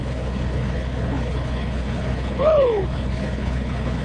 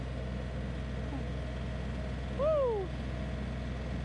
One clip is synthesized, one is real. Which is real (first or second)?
second